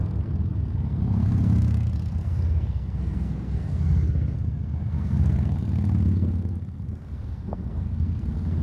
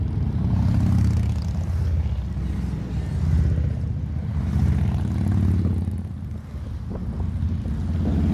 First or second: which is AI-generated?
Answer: first